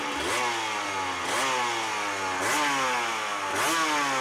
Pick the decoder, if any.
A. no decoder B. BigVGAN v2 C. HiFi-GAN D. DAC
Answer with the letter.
A